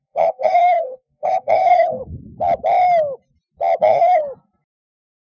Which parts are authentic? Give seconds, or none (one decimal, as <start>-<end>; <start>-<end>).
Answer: 2.0-3.8; 4.2-4.9